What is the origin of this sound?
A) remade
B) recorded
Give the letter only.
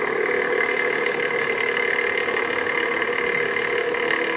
B